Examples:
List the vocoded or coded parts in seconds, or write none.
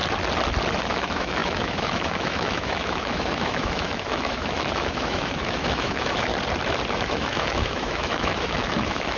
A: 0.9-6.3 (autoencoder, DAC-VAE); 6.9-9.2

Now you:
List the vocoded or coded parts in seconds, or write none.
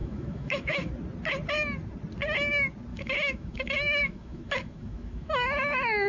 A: 0.0-0.9 (autoencoder, DAC-VAE); 2.9-6.1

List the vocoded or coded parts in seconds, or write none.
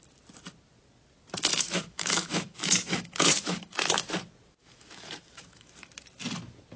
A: 1.5-4.1 (autoencoder, DAC-VAE); 4.6-5.7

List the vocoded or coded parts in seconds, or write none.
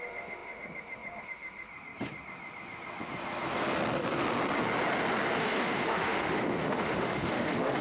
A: 0.0-1.7 (autoencoder, DAC-VAE); 5.4-7.8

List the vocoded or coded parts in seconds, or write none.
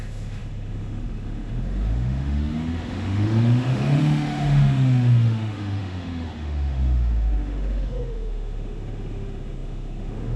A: 0.0-10.4 (autoencoder, DAC-VAE)